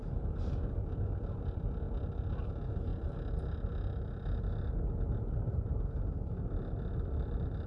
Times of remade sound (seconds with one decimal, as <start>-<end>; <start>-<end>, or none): none